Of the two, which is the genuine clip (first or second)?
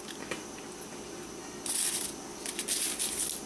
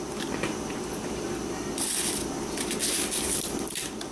first